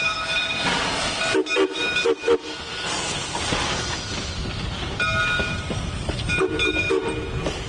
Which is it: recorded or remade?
recorded